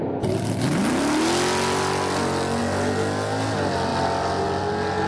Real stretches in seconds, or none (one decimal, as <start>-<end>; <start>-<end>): 0.0-5.1